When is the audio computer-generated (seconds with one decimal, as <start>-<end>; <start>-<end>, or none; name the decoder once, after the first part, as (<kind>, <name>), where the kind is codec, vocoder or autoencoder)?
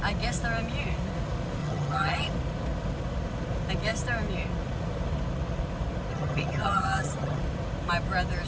1.6-2.3 (vocoder, HiFi-GAN); 6.1-7.4